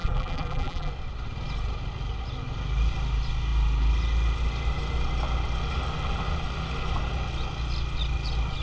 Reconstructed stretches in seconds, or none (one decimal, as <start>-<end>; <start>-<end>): 0.0-0.9